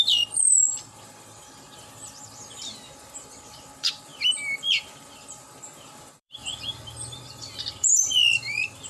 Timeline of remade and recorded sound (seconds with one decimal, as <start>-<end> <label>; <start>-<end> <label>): 0.0-6.4 remade; 6.4-7.2 recorded; 7.2-8.9 remade